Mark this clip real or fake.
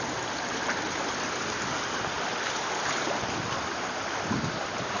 real